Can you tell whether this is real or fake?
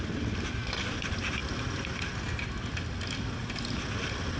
real